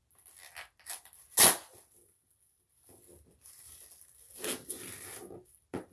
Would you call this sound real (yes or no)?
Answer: yes